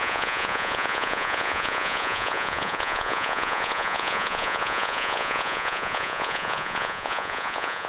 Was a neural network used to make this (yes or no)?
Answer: yes